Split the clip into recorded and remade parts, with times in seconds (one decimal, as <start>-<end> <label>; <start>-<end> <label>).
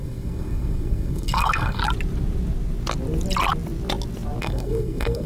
0.0-1.8 remade; 1.8-4.4 recorded; 4.4-5.3 remade